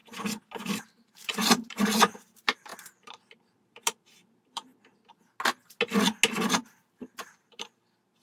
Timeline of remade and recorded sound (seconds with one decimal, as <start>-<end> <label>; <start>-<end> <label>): 0.0-0.8 recorded; 0.8-4.7 remade; 4.7-7.5 recorded; 7.5-8.2 remade